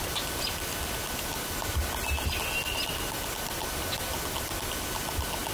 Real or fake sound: real